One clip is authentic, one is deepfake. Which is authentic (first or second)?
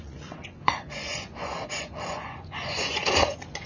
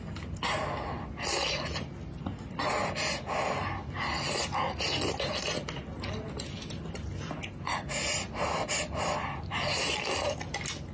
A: second